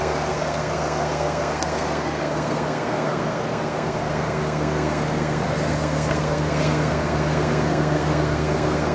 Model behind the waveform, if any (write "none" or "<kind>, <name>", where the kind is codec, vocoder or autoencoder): codec, SNAC